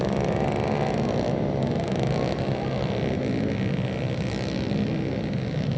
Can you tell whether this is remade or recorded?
recorded